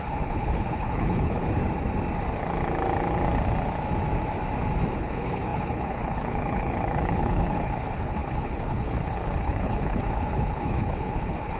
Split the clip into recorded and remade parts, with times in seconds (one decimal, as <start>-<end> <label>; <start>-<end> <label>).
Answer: 0.0-1.4 remade; 1.4-5.0 recorded; 5.0-11.6 remade